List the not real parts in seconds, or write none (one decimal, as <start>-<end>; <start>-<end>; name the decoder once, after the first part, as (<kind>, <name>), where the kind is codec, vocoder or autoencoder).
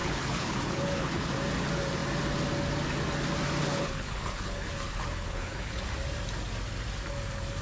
0.0-1.3 (codec, HILCodec); 3.6-5.9